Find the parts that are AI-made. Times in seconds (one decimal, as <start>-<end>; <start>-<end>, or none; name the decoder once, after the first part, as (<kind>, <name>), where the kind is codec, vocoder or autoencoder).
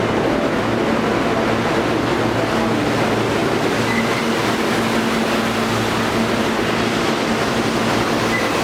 none